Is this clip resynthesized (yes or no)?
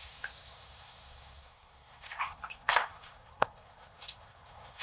yes